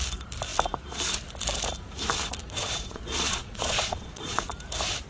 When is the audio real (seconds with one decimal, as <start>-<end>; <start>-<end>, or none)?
0.0-2.4; 4.5-5.1